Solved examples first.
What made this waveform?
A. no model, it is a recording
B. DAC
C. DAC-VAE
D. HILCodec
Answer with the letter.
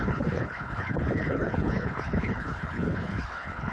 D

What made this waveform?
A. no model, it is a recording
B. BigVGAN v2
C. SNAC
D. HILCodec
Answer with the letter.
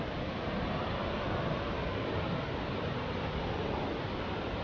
A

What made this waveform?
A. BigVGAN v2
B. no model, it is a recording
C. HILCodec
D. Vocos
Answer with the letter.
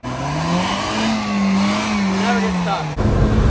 B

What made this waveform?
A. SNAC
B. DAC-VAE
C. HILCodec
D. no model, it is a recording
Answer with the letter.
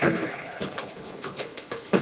C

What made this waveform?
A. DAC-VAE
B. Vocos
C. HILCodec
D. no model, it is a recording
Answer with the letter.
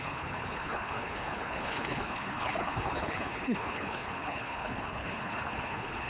C